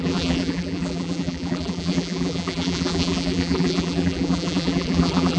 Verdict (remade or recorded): remade